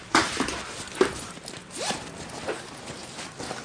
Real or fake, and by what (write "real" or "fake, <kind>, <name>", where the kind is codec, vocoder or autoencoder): real